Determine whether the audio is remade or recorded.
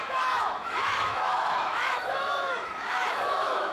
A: remade